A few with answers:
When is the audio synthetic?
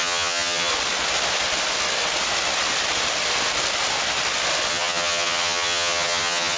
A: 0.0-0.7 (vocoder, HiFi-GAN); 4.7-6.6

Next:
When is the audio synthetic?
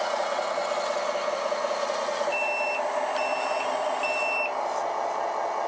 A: 0.0-0.6 (vocoder, Vocos); 1.3-2.3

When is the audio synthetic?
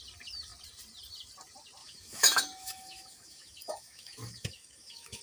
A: 1.8-5.2 (autoencoder, DAC-VAE)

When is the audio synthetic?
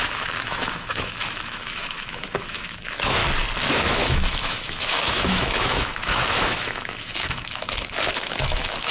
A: 0.0-3.2 (autoencoder, DAC-VAE); 3.7-8.9